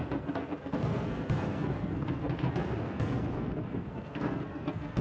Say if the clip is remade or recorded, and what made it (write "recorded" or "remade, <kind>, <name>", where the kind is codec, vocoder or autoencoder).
remade, codec, SNAC